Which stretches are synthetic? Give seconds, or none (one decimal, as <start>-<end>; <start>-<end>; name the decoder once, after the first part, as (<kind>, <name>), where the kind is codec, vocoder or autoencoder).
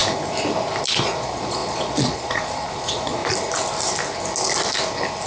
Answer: 1.0-3.2 (vocoder, Vocos)